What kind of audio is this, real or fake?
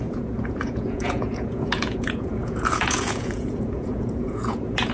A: fake